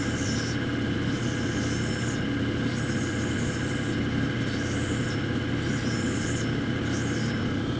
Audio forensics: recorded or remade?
recorded